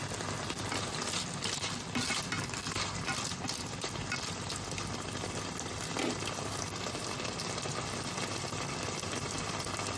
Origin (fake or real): real